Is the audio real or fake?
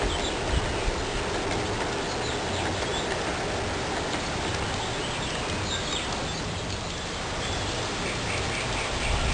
real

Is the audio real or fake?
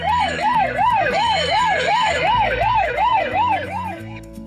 fake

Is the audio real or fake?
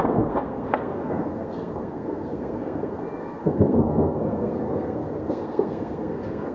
fake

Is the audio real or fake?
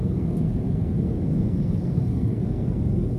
fake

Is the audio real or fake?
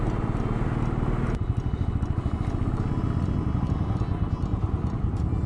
real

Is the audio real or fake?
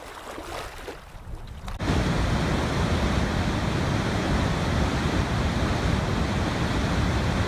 real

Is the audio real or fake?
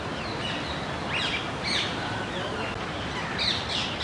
real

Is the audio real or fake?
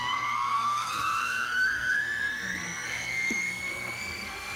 fake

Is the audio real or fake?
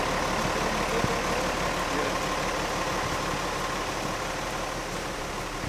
real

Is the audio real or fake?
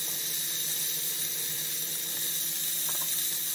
real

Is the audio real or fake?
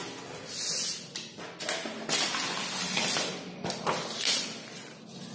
real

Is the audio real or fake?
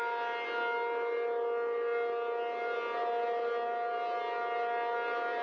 real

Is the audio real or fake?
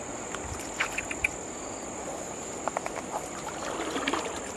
real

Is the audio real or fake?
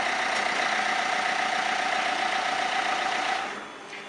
real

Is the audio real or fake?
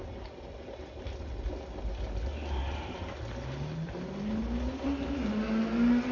real